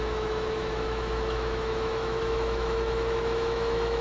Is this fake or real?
fake